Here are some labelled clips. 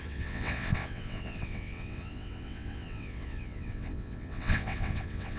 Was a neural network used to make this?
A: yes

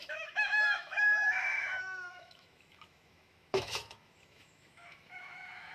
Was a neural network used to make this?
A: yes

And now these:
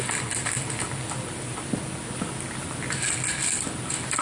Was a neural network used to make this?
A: no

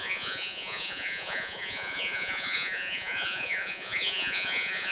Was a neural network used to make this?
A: yes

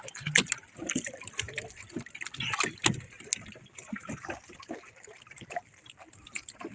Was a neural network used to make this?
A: no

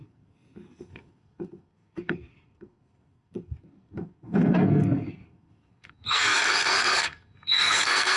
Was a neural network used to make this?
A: yes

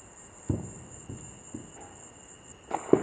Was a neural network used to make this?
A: no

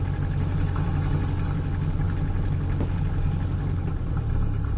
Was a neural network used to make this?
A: no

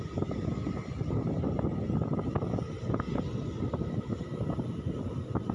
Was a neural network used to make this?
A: no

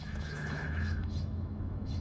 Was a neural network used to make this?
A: yes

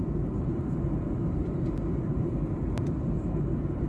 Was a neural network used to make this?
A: no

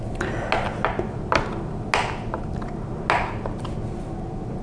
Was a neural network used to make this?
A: no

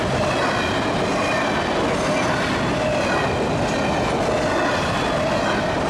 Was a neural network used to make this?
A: no